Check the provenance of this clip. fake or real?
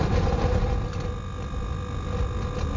real